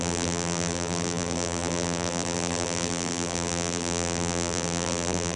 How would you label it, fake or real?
fake